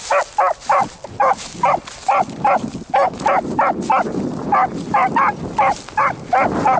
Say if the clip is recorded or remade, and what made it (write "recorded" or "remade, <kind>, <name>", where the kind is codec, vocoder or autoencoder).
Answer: recorded